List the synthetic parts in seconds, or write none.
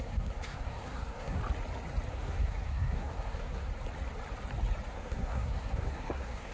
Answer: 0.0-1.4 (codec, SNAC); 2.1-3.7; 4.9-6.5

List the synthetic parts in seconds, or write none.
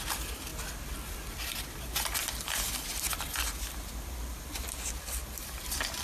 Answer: none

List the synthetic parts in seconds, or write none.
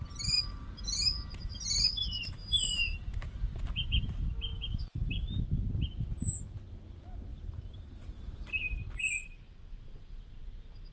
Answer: 2.0-3.0 (vocoder, BigVGAN v2); 4.5-5.4; 7.3-8.7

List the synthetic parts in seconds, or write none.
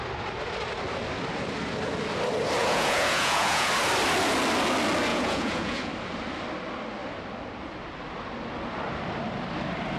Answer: 2.6-3.7 (vocoder, Vocos); 5.1-5.9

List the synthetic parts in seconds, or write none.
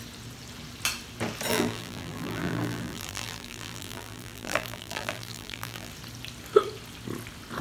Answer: 1.5-5.9 (vocoder, BigVGAN v2)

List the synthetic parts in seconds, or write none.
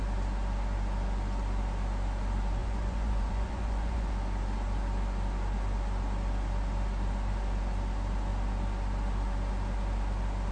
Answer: 2.6-4.1 (vocoder, Vocos)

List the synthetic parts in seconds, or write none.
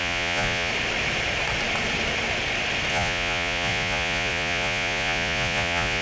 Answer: 0.0-0.7 (vocoder, Vocos); 2.9-6.0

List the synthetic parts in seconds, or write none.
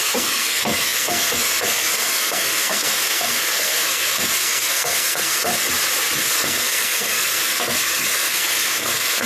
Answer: 0.0-5.5 (codec, SNAC); 6.2-9.3